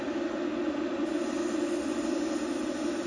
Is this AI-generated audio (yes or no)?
no